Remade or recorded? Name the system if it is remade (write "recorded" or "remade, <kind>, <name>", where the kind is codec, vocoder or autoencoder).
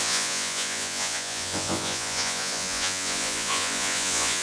remade, vocoder, Vocos